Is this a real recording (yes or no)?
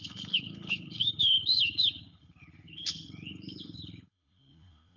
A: no